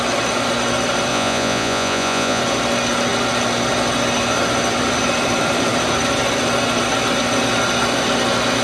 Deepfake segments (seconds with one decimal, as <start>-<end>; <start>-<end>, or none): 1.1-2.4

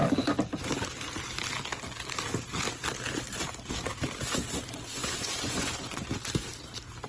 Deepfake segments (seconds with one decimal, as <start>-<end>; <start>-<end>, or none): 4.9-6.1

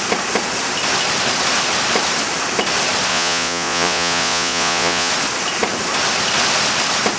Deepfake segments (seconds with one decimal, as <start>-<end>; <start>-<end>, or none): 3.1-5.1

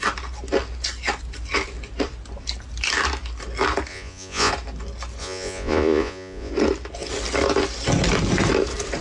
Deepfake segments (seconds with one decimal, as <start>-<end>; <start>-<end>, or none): 3.9-4.5; 5.2-6.5